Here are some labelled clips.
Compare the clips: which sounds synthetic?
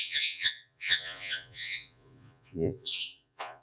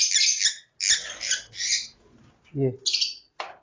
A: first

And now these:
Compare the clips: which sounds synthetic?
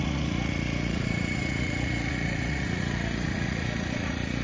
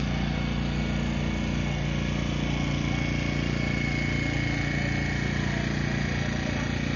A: first